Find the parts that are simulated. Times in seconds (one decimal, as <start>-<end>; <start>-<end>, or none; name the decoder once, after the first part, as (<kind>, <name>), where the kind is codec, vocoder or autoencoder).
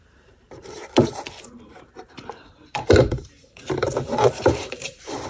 0.0-0.8 (vocoder, BigVGAN v2); 1.4-5.3